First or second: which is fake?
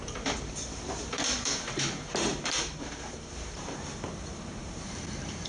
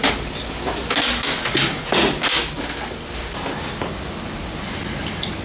first